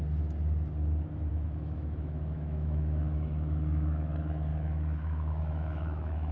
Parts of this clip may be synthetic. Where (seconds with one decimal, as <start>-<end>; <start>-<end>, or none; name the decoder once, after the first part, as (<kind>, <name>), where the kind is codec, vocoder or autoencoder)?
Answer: 1.3-6.3 (autoencoder, DAC-VAE)